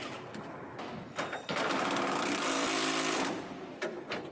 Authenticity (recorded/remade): remade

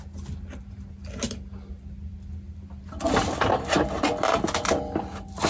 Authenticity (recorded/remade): recorded